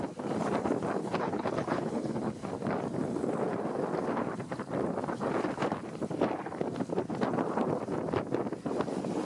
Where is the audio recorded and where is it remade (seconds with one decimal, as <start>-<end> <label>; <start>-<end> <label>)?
0.0-1.0 recorded; 1.0-2.5 remade; 2.5-9.2 recorded